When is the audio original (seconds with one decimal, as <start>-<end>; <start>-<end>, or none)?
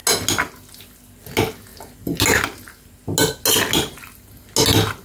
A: 0.0-5.0